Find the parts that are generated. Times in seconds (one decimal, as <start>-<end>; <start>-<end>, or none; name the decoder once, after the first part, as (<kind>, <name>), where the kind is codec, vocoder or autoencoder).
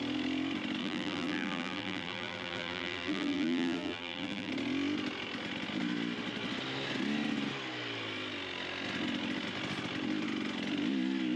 0.8-4.5 (vocoder, BigVGAN v2)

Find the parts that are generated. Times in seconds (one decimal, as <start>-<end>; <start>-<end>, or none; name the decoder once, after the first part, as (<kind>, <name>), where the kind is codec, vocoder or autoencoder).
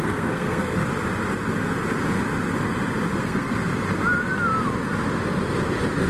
0.0-0.8 (codec, SNAC); 3.2-3.7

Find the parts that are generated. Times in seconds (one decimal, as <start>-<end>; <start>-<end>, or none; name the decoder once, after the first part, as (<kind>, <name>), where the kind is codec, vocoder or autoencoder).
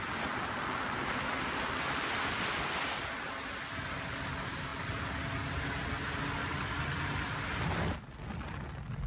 none